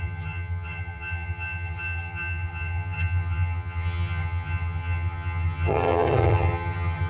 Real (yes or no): no